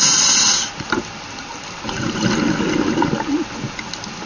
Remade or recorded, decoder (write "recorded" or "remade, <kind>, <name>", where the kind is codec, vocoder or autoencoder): recorded